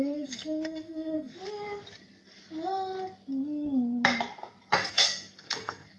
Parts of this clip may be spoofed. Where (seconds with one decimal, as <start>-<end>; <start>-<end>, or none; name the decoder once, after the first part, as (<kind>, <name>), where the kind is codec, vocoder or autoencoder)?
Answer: 0.0-1.4 (codec, SNAC); 4.9-6.0